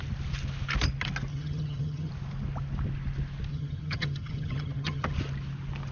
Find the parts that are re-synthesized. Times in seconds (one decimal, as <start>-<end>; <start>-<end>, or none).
1.3-2.1; 3.5-5.1